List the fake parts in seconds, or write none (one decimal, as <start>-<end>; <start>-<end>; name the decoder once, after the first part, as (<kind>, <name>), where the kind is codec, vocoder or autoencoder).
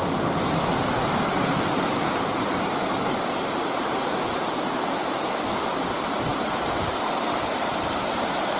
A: none